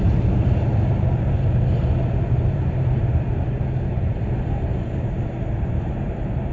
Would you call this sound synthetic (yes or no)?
yes